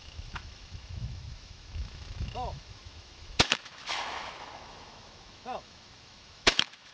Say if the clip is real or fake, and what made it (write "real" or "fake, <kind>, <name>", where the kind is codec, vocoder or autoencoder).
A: fake, autoencoder, DAC-VAE